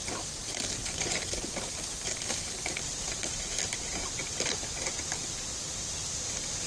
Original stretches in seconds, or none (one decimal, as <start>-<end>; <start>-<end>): 0.0-0.8; 1.5-6.7